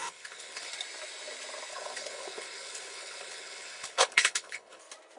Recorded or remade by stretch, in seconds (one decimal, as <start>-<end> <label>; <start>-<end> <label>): 0.0-0.7 remade; 0.7-1.7 recorded; 1.7-4.8 remade; 4.8-5.2 recorded